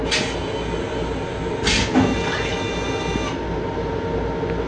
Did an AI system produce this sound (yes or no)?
no